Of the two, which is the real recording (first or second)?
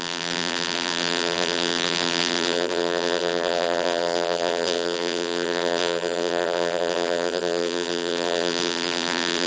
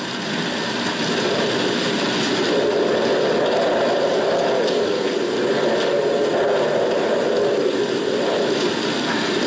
second